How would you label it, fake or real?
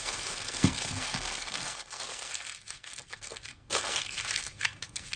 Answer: fake